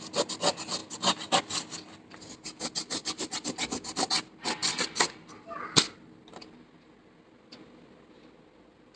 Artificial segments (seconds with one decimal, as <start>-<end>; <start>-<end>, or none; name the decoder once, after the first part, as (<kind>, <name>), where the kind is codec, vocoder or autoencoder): none